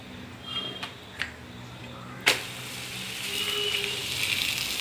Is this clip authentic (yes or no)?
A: yes